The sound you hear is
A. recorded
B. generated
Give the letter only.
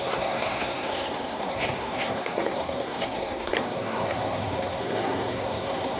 B